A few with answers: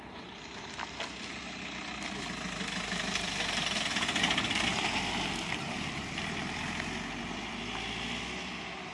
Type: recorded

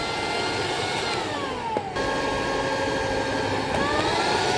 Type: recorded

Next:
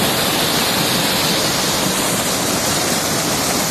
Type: recorded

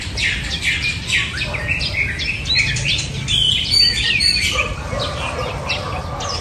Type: remade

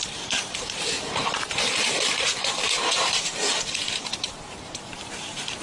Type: remade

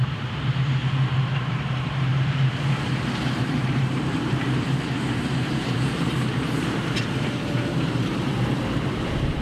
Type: remade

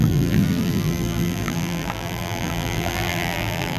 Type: remade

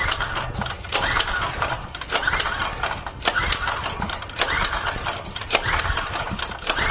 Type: remade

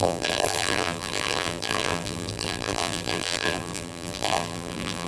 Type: remade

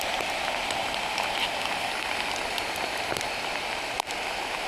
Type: recorded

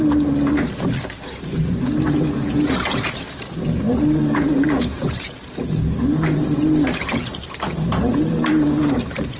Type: remade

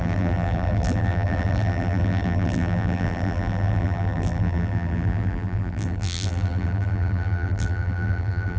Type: remade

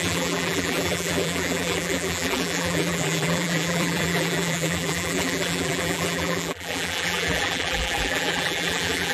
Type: remade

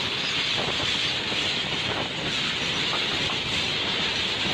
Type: recorded